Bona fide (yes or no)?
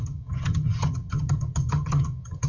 no